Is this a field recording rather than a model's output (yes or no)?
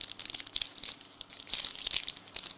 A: yes